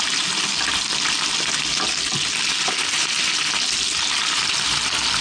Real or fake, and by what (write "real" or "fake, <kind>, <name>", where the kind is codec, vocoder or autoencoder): real